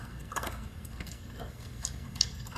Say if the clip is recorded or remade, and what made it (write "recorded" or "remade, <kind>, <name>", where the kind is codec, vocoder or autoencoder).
remade, codec, SNAC